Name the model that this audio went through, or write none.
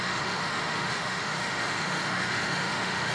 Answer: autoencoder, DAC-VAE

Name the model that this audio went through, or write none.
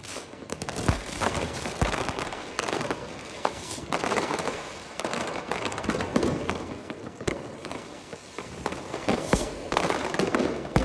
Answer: codec, SNAC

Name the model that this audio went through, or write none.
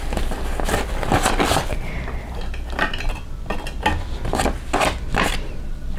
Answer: none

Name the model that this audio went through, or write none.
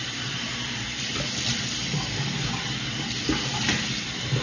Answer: vocoder, BigVGAN v2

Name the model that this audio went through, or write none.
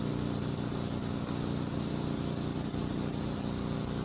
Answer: none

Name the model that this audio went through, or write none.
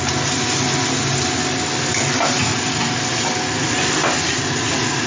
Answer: none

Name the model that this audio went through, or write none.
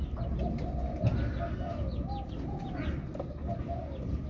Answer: none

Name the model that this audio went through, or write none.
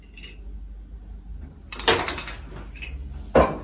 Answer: none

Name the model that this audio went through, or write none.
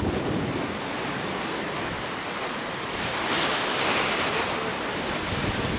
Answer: none